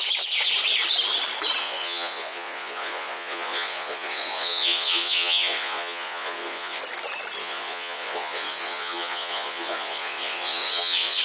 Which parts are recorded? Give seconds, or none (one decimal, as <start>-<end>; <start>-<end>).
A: 0.0-1.6; 6.8-7.4